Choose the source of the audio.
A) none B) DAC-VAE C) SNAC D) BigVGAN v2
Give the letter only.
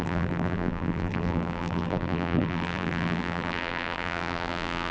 D